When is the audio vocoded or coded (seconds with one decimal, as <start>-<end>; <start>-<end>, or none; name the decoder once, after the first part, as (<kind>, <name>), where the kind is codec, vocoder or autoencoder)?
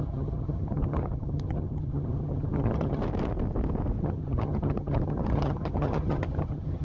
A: 0.0-3.0 (vocoder, HiFi-GAN); 4.0-6.8